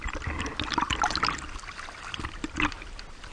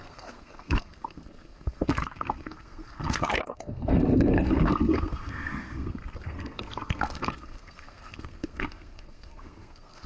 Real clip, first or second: first